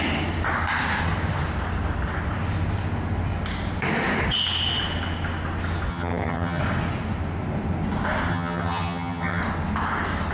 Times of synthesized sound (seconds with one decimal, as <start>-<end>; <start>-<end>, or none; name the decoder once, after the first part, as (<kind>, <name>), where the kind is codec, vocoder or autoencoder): 5.9-6.6 (vocoder, HiFi-GAN); 8.3-9.4